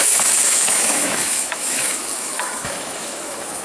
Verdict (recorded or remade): remade